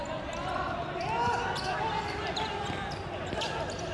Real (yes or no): yes